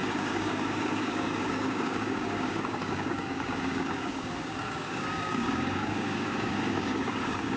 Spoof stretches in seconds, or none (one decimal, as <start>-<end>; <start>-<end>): 0.0-7.6